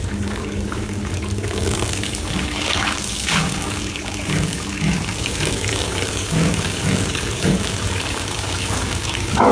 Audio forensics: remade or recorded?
remade